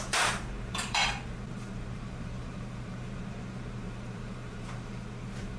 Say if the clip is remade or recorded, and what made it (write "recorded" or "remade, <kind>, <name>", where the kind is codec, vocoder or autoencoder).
remade, vocoder, BigVGAN v2